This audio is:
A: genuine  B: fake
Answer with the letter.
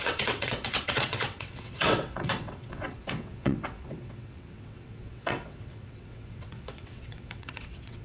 B